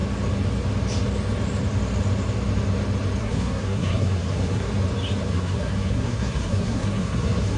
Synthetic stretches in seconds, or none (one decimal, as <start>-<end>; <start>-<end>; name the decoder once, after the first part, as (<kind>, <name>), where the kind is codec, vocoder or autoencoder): 3.2-4.7 (codec, SNAC); 5.3-7.6